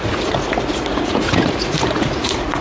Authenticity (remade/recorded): remade